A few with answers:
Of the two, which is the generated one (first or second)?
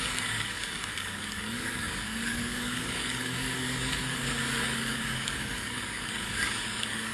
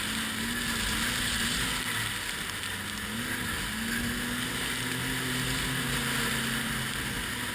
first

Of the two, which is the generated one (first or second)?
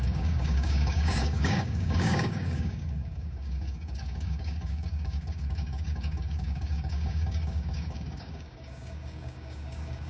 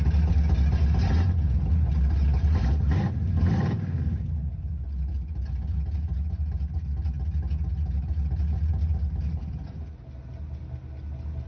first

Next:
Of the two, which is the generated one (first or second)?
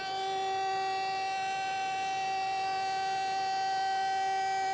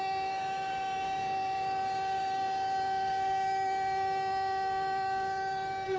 second